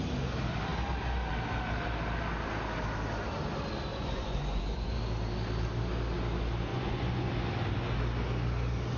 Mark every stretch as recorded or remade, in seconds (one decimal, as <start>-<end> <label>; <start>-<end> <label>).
0.0-3.9 recorded; 3.9-5.0 remade; 5.0-6.7 recorded; 6.7-7.3 remade; 7.3-9.0 recorded